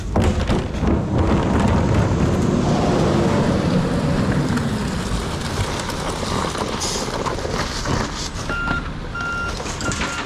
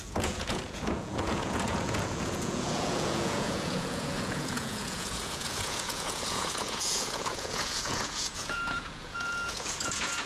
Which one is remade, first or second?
second